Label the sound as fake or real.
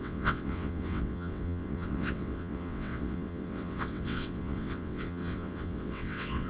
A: fake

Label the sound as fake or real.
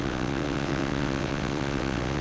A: fake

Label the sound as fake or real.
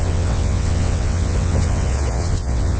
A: fake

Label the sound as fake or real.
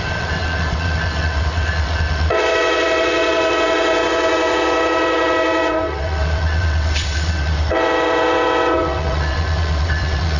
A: fake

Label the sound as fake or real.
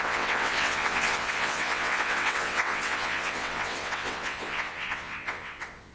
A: fake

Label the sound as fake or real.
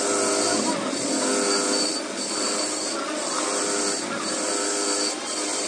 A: real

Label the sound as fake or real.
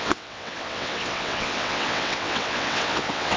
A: fake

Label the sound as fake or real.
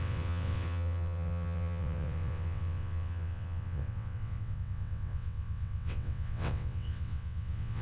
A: fake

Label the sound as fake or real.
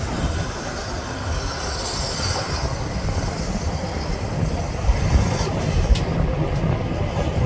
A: real